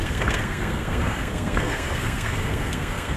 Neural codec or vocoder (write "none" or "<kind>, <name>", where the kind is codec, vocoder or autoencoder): codec, SNAC